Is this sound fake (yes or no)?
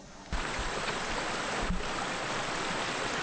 no